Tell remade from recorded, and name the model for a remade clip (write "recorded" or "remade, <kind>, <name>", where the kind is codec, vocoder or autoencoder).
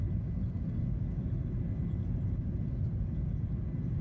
recorded